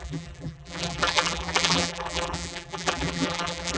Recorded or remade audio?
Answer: remade